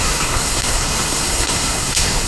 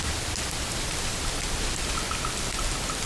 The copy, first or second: first